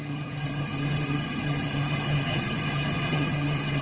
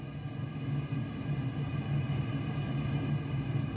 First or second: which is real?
second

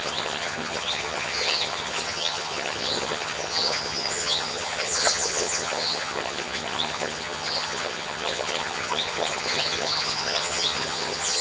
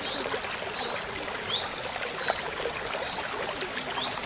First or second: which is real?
second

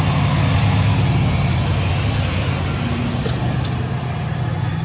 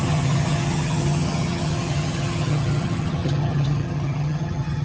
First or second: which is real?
first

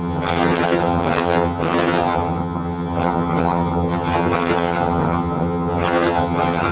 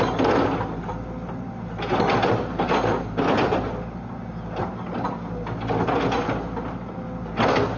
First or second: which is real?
second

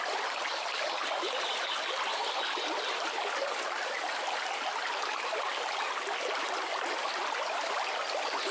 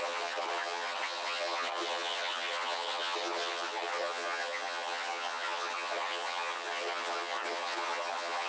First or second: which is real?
first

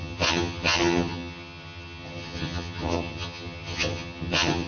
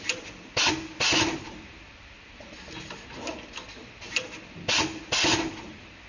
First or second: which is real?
second